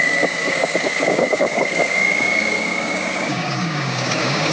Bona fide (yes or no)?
no